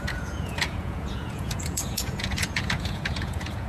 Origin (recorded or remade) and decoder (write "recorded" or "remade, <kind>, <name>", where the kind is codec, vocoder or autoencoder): remade, vocoder, Vocos